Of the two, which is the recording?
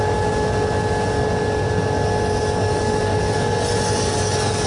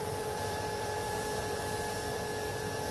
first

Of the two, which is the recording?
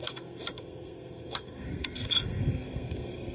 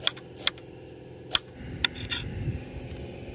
second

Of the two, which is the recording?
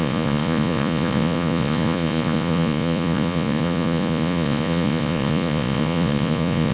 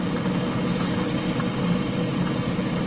second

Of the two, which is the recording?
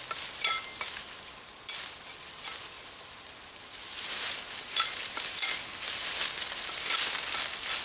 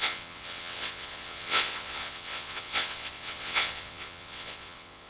first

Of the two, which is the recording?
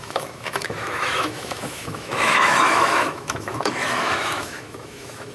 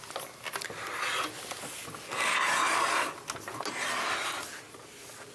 second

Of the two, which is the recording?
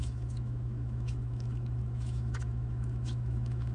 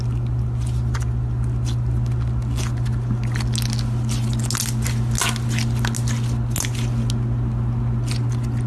second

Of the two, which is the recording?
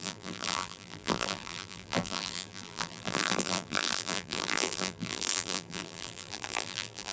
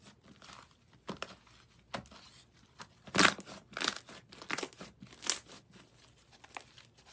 second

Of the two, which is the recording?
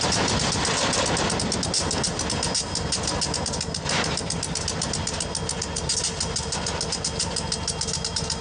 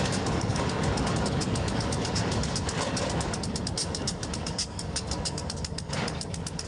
first